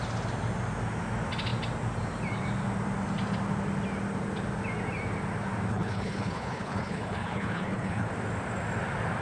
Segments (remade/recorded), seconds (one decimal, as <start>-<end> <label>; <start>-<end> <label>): 0.0-5.7 recorded; 5.7-8.1 remade; 8.1-9.2 recorded